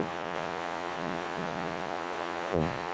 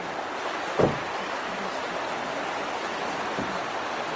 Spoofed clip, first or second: first